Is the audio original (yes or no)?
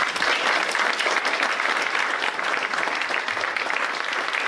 yes